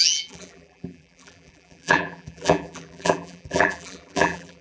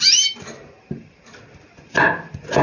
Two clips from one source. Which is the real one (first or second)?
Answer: second